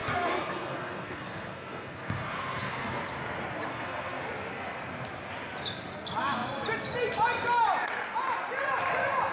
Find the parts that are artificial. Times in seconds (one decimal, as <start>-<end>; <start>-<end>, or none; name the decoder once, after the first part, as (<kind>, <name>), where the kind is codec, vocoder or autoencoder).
0.0-3.0 (codec, SNAC); 3.7-4.2